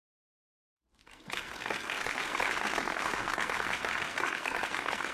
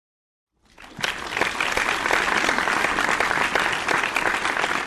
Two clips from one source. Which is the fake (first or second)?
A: first